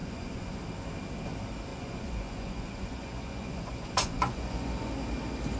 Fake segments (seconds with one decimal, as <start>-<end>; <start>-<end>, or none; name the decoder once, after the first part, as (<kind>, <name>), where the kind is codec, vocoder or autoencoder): 0.0-0.6 (vocoder, Vocos); 1.7-4.9